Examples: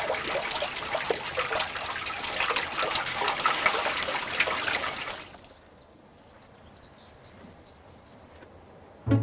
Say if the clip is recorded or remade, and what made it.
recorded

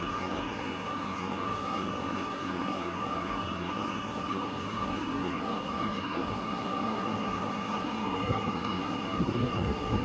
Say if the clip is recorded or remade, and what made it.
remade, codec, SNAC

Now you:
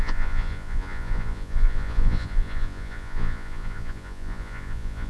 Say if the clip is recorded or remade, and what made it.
remade, vocoder, Vocos